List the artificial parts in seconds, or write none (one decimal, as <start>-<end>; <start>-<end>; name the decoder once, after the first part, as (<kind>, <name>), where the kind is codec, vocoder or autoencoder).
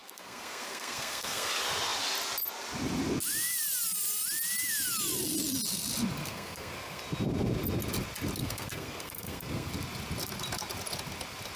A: 0.0-1.5 (codec, SNAC); 6.2-7.0; 8.4-9.7